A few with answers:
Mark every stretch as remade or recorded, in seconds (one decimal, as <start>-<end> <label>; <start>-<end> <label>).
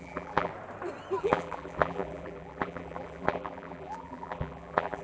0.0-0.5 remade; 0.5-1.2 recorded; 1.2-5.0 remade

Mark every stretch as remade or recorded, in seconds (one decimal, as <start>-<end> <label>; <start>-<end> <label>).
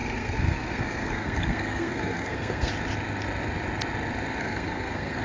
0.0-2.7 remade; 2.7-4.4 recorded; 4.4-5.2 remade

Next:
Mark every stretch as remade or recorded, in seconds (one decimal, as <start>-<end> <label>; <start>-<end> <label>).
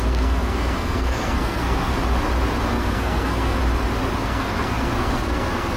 0.0-2.0 remade; 2.0-2.7 recorded; 2.7-3.6 remade; 3.6-4.2 recorded; 4.2-5.8 remade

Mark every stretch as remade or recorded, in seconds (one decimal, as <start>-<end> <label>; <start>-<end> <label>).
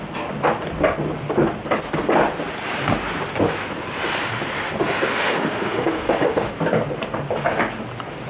0.0-5.1 recorded; 5.1-6.5 remade; 6.5-8.3 recorded